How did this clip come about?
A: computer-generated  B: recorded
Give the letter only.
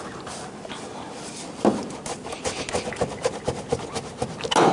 B